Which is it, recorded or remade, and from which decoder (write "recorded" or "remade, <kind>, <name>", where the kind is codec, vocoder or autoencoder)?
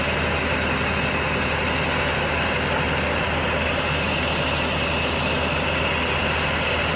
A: recorded